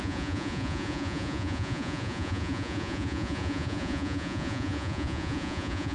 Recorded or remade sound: remade